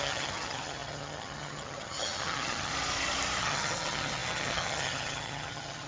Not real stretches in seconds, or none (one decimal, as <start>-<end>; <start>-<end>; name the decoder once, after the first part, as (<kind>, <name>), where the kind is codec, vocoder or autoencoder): 0.0-2.7 (vocoder, HiFi-GAN); 3.4-5.9